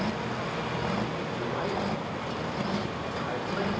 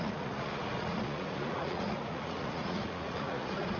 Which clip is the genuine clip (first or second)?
first